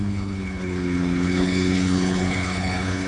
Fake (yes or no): yes